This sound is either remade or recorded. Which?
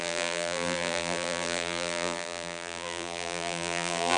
remade